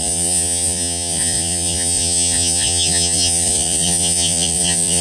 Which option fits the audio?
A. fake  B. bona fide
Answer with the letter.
A